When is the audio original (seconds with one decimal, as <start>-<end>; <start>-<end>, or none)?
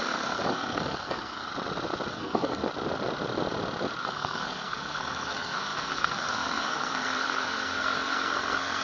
1.5-2.1; 2.6-4.0